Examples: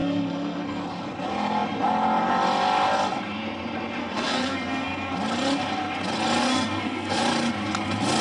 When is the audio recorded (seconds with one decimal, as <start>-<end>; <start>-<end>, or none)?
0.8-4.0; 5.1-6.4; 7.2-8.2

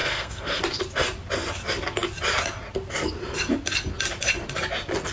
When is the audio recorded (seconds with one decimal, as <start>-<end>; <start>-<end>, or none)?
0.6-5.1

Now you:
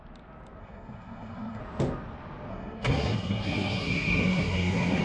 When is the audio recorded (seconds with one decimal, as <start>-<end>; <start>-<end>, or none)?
0.0-0.6; 1.6-2.5

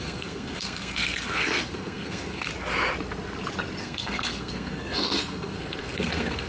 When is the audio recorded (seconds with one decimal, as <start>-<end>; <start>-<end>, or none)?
2.5-3.8

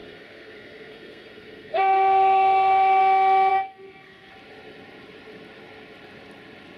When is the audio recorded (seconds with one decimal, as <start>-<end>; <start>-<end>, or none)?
3.0-3.5; 4.3-6.8